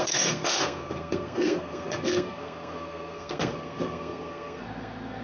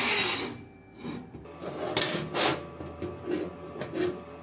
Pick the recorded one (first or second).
second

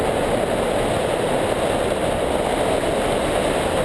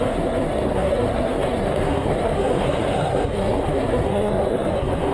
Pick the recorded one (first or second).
first